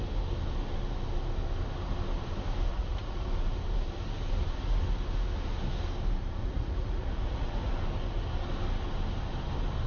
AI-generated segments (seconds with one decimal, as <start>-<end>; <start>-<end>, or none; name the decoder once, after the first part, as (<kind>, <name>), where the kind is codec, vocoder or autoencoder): 2.7-3.3 (vocoder, Vocos); 6.4-7.7